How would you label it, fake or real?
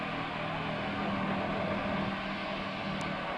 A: real